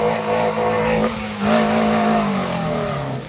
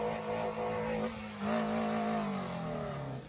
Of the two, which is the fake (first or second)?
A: first